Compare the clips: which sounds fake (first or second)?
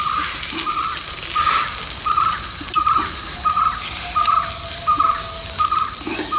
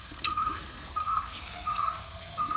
second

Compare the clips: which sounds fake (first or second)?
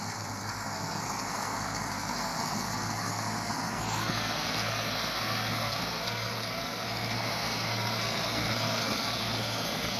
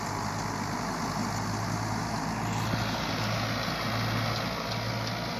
first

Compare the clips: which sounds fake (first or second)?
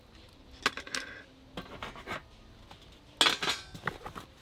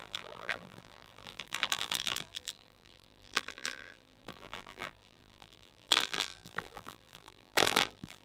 second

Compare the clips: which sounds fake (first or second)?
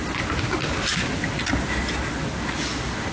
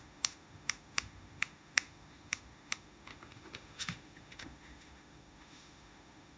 second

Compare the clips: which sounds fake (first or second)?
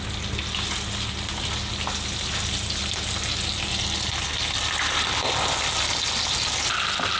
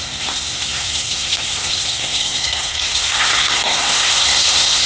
second